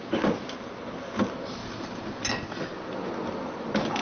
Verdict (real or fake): real